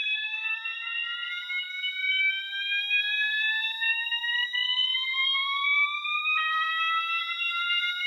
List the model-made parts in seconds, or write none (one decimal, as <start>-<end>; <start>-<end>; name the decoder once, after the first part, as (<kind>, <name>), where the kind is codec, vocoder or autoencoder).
0.0-1.3 (vocoder, BigVGAN v2); 4.2-6.7; 7.2-8.1